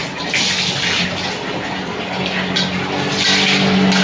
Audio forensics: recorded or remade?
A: recorded